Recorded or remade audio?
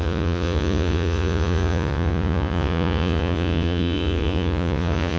remade